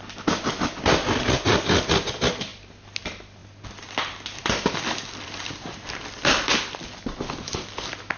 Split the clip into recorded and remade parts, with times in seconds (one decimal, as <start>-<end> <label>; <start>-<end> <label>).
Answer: 0.0-8.2 recorded